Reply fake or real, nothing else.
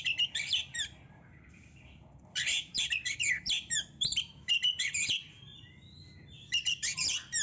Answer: fake